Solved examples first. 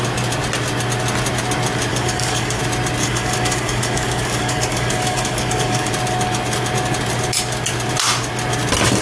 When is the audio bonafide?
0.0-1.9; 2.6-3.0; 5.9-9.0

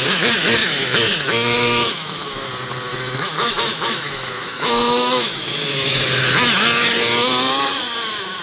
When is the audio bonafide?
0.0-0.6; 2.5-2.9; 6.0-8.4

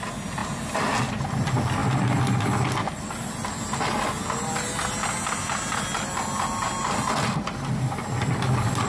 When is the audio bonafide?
0.0-8.9

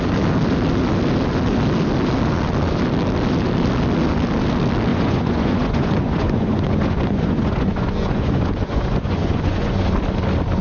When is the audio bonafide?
0.0-4.9; 9.8-10.6